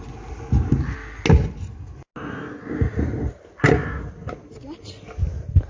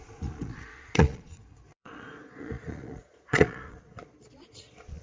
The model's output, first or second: second